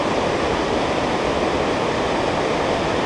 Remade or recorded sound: recorded